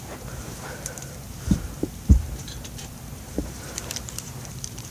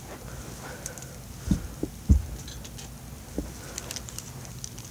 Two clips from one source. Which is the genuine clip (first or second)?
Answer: second